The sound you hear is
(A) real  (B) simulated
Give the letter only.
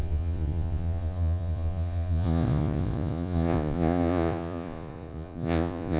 B